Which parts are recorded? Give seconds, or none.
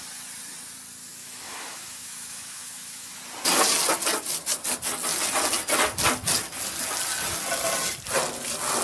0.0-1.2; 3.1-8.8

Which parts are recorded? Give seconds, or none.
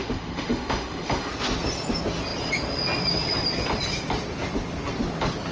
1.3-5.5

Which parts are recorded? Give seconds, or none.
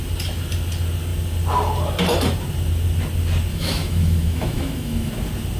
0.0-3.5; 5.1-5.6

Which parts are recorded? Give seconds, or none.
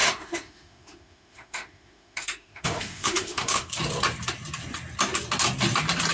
3.7-6.1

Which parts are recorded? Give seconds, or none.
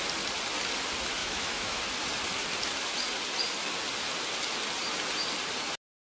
0.0-1.2; 1.8-6.1